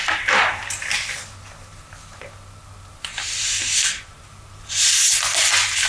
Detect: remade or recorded recorded